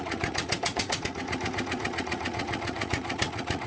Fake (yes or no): yes